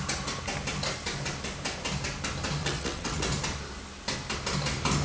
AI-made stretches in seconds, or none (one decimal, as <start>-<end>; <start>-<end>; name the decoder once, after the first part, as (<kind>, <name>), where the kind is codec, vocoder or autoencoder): 2.6-3.2 (vocoder, WaveNeXt)